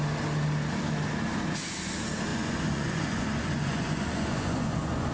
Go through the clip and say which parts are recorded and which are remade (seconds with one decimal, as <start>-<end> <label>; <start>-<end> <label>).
0.0-2.3 recorded; 2.3-5.1 remade